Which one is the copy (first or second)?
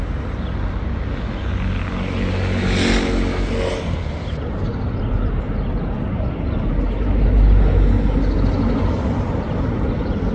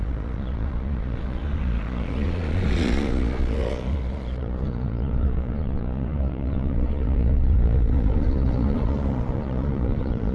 second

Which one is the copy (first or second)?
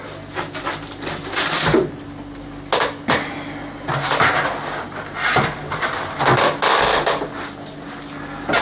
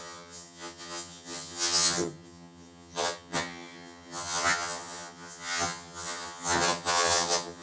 second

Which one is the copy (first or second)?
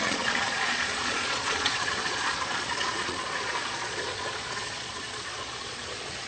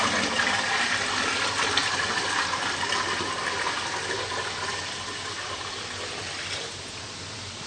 first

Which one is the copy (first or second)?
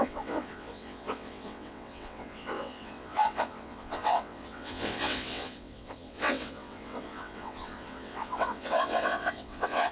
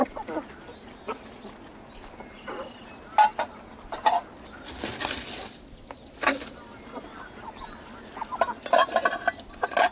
first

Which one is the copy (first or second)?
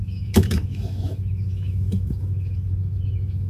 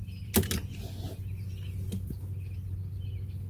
first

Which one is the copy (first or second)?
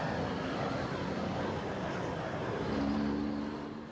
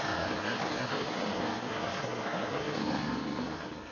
second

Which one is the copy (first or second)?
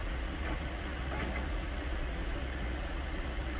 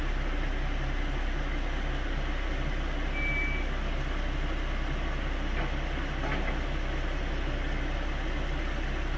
first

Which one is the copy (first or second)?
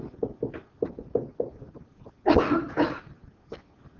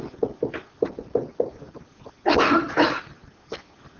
second